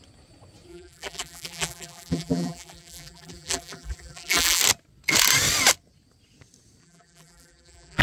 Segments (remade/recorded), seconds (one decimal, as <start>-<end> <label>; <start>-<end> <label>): 0.0-0.7 recorded; 0.7-4.6 remade; 4.6-6.8 recorded; 6.8-8.0 remade